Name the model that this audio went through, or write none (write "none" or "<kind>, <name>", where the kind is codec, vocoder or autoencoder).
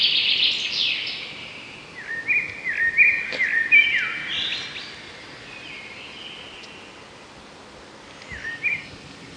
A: none